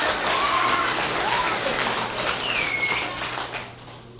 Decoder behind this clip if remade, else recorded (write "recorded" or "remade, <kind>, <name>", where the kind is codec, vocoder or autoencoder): recorded